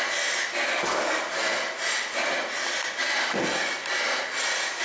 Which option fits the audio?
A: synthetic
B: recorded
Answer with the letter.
B